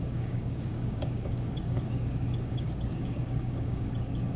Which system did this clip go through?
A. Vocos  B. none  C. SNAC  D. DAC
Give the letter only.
D